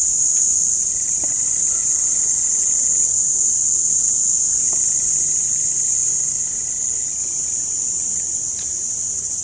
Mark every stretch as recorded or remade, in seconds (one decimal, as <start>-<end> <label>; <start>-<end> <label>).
0.0-1.6 recorded; 1.6-4.1 remade; 4.1-9.4 recorded